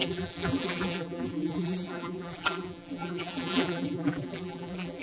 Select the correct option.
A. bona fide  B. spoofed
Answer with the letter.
B